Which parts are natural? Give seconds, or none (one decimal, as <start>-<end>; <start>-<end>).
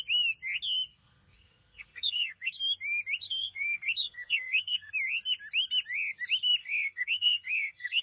0.0-0.9; 2.6-3.2; 4.9-6.6